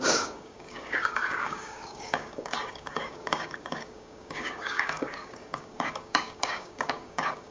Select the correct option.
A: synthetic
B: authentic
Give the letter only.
A